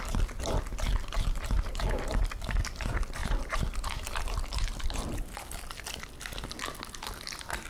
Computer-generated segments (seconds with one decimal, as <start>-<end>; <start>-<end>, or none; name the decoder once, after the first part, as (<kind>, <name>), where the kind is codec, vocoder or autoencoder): none